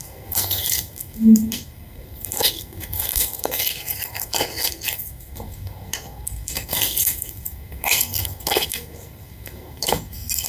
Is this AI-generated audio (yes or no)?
yes